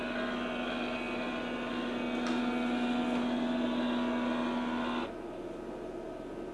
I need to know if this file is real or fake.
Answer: real